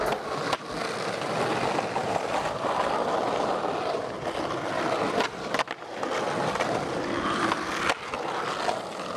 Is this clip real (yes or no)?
yes